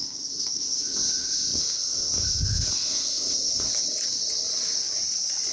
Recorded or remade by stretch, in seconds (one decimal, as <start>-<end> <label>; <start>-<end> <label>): 0.0-3.8 remade; 3.8-5.5 recorded

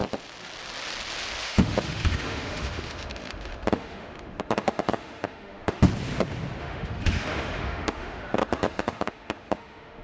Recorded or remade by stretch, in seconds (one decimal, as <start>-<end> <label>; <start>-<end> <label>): 0.0-1.4 recorded; 1.4-5.9 remade; 5.9-6.6 recorded; 6.6-10.0 remade

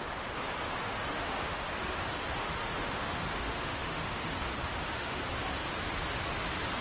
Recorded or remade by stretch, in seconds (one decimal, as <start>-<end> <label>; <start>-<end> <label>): 0.0-0.8 recorded; 0.8-1.6 remade; 1.6-2.4 recorded; 2.4-4.3 remade; 4.3-4.7 recorded; 4.7-5.2 remade; 5.2-6.8 recorded

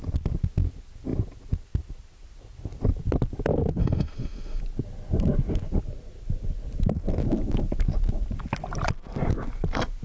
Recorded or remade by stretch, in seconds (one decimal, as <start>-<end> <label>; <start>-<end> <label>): 0.0-3.8 recorded; 3.8-4.6 remade; 4.6-10.0 recorded

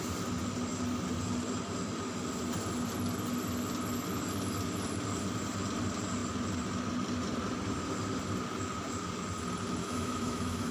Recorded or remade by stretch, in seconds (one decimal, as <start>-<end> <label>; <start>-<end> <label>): 0.0-9.8 recorded; 9.8-10.7 remade

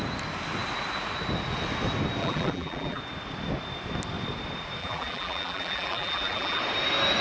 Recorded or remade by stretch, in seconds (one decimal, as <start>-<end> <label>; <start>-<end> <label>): 0.0-2.2 recorded; 2.2-3.0 remade; 3.0-4.8 recorded; 4.8-6.6 remade; 6.6-7.2 recorded